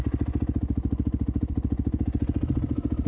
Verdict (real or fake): real